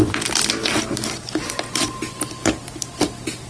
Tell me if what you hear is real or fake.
real